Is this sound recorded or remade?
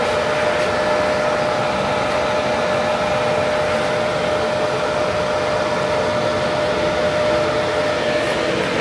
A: recorded